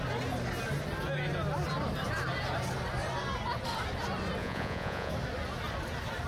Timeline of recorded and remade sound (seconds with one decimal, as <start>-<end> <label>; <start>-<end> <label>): 0.0-4.4 recorded; 4.4-5.1 remade; 5.1-6.3 recorded